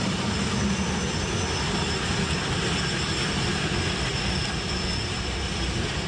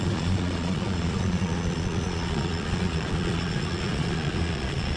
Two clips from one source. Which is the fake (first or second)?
second